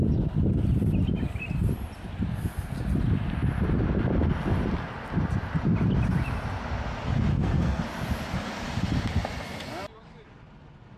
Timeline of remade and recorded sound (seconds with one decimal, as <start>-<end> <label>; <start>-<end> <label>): 0.0-7.3 recorded; 7.3-7.8 remade; 7.8-11.0 recorded